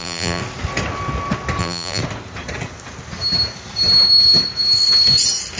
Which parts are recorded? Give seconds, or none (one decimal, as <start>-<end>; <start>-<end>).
0.4-1.6; 2.0-5.6

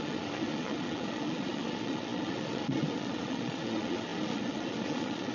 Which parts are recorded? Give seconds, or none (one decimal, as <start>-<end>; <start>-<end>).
none

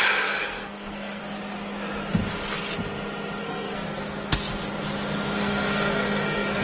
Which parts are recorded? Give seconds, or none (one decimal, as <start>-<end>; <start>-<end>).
0.0-0.4; 1.2-3.4; 4.0-5.4

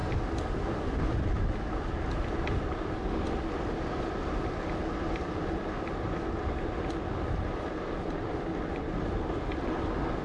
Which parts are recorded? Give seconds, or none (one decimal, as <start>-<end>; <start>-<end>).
0.0-10.2

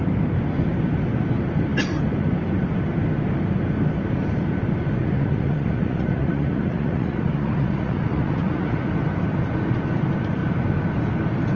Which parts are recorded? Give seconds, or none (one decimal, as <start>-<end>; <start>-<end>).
0.0-5.0; 8.9-11.6

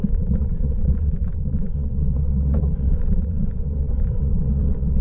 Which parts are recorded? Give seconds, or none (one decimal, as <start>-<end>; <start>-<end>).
none

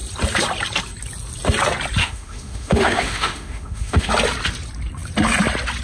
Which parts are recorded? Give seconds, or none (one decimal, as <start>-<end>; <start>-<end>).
0.0-2.0; 4.1-5.8